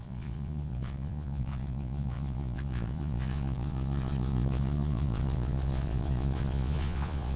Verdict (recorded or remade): remade